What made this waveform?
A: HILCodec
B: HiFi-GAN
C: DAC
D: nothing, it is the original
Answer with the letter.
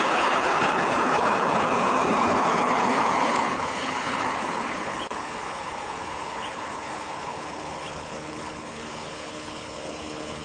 A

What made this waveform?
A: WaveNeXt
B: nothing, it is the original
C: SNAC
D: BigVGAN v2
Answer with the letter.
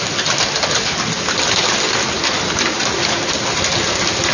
B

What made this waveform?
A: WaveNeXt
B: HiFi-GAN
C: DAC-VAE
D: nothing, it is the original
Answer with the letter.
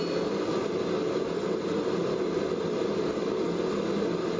D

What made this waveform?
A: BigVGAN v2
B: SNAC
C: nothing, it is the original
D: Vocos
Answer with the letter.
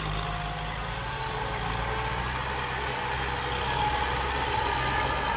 C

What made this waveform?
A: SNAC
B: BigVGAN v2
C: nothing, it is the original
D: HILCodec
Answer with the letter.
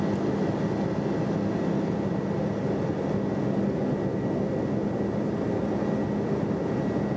C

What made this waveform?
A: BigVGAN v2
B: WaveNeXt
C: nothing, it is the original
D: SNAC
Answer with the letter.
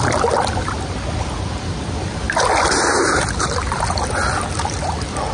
C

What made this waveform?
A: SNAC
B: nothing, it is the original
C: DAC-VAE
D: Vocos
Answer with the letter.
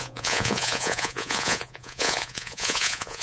D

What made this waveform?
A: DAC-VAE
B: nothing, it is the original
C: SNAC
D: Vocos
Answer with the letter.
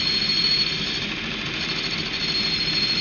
B